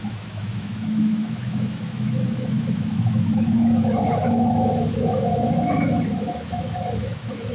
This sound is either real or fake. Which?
fake